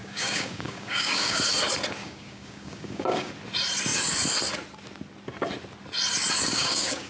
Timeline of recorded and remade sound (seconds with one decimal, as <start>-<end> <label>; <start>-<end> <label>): 0.0-1.4 remade; 1.4-2.0 recorded; 2.0-3.3 remade; 3.3-6.5 recorded; 6.5-7.1 remade